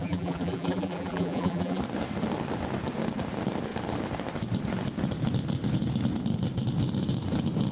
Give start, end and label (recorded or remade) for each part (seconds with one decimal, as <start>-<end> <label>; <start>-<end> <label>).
0.0-1.8 remade; 1.8-7.7 recorded